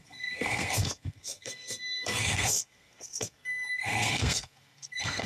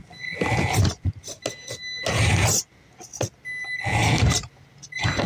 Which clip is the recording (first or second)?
second